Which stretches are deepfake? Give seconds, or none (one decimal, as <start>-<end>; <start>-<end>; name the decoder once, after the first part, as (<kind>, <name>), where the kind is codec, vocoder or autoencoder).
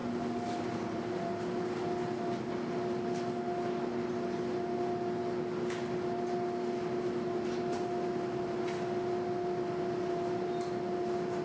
none